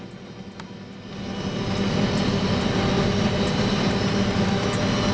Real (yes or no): yes